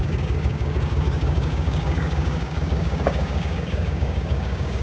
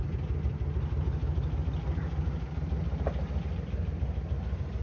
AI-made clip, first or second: first